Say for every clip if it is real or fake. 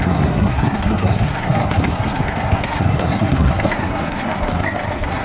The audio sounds fake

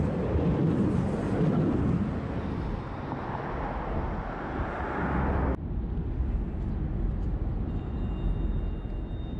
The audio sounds real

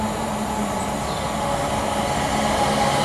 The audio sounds real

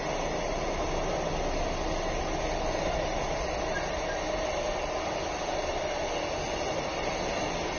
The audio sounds real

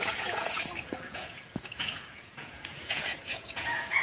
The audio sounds fake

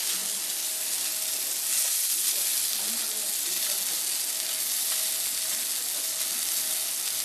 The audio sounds real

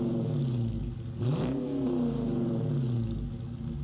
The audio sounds real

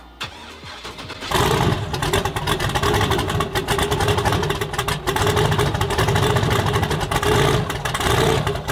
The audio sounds real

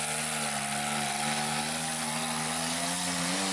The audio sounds real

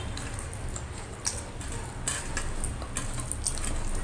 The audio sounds real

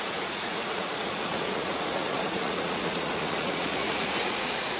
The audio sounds fake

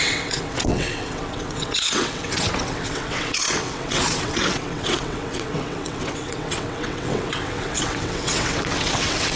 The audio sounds fake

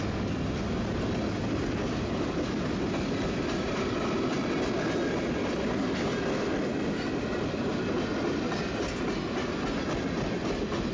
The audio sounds real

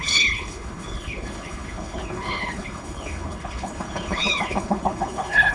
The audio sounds fake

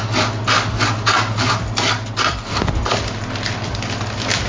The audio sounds real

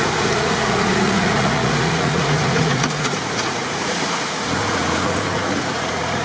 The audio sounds fake